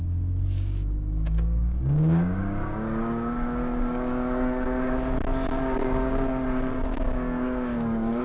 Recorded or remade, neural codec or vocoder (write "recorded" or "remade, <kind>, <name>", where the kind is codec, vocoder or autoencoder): remade, codec, DAC